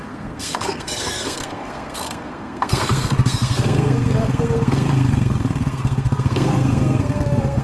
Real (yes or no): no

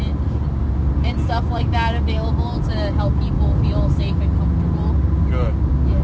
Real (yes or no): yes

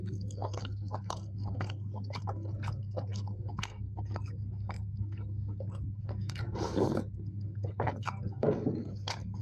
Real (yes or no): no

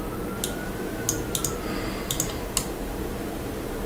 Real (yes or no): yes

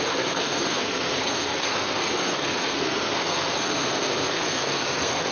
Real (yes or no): no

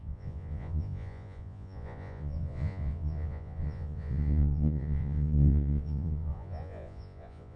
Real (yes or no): no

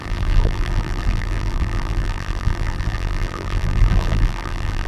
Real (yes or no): no